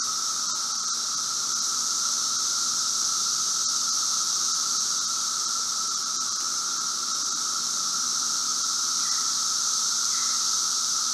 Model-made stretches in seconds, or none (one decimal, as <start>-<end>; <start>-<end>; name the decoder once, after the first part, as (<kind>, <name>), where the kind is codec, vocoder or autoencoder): 0.0-8.5 (vocoder, BigVGAN v2); 9.2-11.1